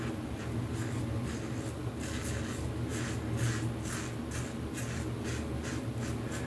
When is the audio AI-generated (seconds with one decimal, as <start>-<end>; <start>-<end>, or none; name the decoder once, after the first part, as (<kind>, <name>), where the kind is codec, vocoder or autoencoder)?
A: none